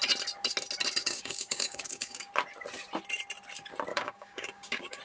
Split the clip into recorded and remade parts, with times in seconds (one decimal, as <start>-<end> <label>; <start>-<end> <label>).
0.0-1.0 recorded; 1.0-2.3 remade; 2.3-3.9 recorded; 3.9-5.0 remade